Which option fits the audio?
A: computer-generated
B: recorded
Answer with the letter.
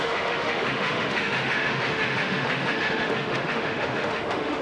A